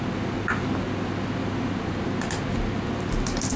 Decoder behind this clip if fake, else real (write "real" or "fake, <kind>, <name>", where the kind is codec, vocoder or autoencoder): real